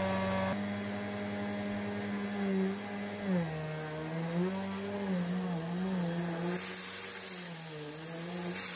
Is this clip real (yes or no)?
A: yes